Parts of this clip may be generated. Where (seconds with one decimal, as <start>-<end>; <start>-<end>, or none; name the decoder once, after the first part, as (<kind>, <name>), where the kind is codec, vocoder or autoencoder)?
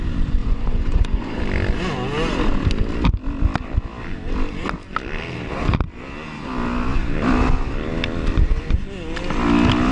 0.4-1.4 (vocoder, Vocos)